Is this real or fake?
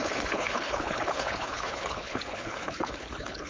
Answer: fake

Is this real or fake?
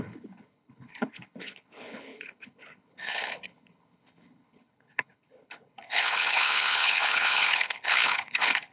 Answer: fake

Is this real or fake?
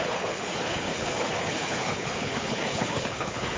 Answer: fake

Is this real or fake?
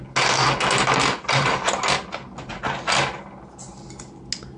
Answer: real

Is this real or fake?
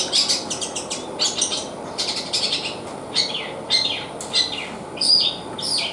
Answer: real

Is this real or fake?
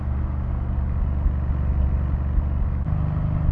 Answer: real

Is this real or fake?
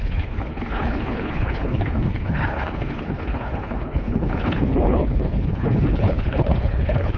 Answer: fake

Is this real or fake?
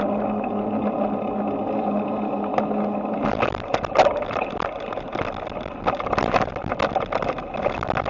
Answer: real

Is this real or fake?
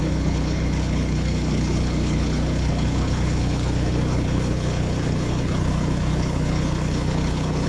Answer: fake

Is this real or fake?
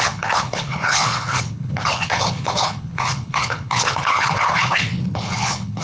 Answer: fake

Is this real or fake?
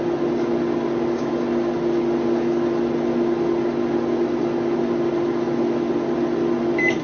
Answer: real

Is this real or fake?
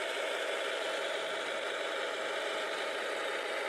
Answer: real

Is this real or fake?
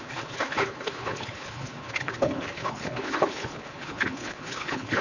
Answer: fake